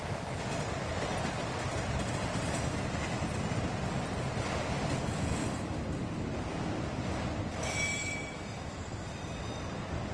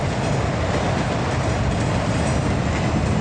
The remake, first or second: first